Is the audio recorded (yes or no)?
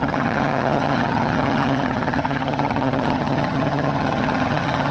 no